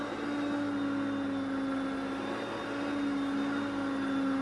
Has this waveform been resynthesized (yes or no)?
no